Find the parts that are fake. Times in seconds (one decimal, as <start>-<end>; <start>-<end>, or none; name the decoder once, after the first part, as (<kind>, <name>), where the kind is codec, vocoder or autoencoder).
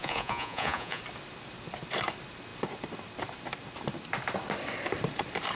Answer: 0.0-1.0 (vocoder, Vocos)